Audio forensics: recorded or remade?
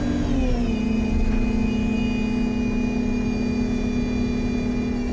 recorded